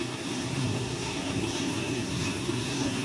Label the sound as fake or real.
fake